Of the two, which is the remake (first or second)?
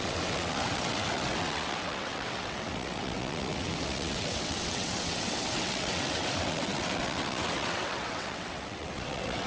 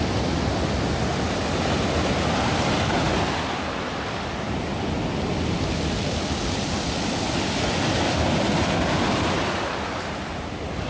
first